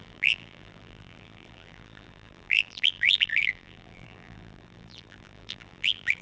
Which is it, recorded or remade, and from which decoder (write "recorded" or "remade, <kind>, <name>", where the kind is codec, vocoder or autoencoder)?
remade, vocoder, BigVGAN v2